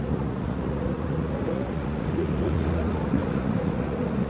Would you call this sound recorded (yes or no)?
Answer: no